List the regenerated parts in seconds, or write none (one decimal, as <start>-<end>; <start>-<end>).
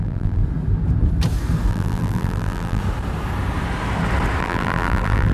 0.0-0.4; 1.7-2.8; 4.4-5.3